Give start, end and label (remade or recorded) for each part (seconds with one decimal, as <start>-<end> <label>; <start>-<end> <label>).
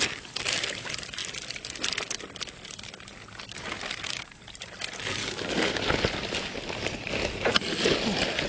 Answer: 0.0-5.2 recorded; 5.2-5.8 remade; 5.8-8.5 recorded